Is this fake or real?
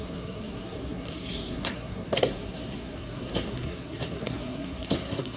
fake